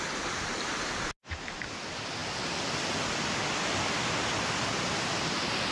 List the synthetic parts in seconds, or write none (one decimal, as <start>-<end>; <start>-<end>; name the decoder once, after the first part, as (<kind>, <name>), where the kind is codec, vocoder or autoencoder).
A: none